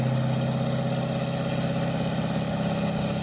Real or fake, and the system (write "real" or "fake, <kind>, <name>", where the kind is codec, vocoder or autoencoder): real